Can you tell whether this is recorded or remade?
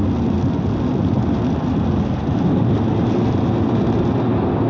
recorded